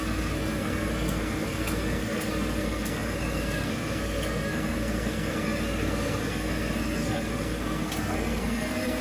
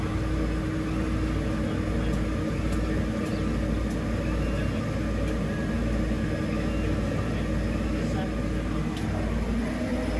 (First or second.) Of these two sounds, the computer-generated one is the first